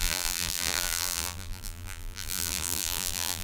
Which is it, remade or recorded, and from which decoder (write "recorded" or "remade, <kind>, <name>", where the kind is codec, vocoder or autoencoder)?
remade, vocoder, BigVGAN v2